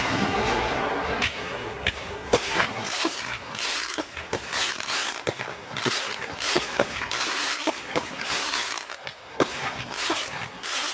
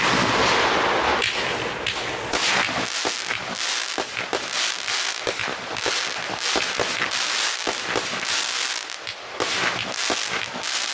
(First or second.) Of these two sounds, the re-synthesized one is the first